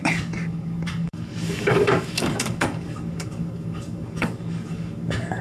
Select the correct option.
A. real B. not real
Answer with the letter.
B